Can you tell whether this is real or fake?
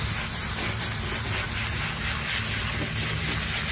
real